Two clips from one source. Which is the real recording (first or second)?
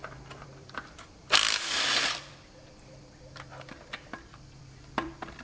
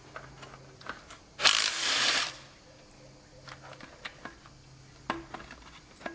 second